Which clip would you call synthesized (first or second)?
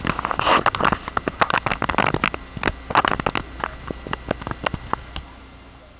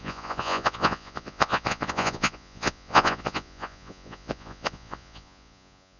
second